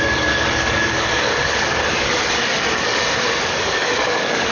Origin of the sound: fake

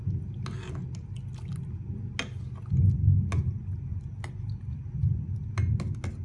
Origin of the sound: real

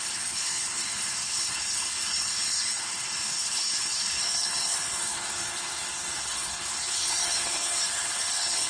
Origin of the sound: fake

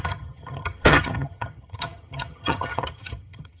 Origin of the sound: fake